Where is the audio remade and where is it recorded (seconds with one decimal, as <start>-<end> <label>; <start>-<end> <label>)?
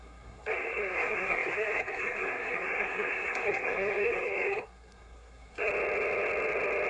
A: 0.0-5.7 remade; 5.7-6.9 recorded